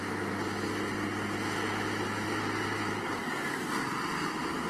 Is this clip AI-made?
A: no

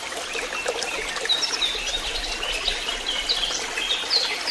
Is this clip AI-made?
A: no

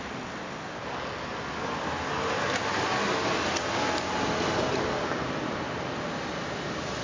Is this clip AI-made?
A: no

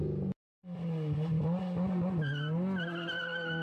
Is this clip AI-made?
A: no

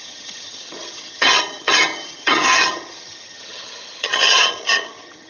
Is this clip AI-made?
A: yes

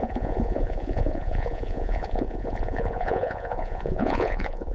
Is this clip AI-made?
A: yes